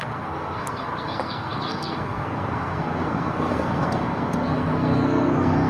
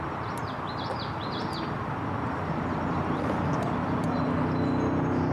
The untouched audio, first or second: second